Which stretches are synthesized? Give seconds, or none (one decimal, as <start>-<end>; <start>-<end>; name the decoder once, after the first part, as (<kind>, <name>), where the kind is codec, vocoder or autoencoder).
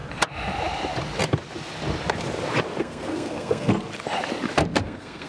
2.8-3.7 (codec, SNAC); 4.8-5.3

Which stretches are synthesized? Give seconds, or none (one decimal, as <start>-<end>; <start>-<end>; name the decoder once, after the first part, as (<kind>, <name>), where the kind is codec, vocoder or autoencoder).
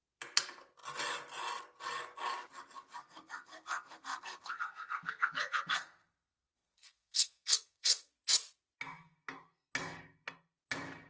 3.0-8.1 (codec, SNAC)